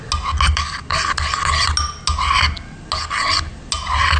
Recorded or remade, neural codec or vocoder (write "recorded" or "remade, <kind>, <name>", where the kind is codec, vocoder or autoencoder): recorded